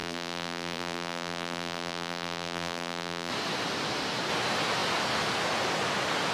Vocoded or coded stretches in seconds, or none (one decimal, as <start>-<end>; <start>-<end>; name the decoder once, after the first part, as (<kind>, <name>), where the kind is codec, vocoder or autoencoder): 0.0-3.3 (vocoder, BigVGAN v2)